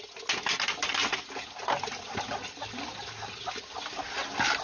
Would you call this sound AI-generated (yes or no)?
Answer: no